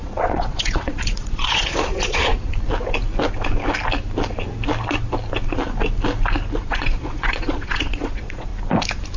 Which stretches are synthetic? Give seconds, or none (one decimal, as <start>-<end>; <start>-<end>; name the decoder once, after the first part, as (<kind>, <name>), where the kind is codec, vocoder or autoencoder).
0.0-2.3 (vocoder, Vocos); 6.6-8.5